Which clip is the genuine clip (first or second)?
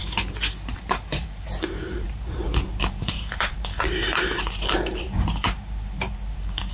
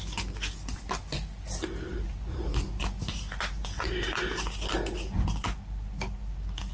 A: second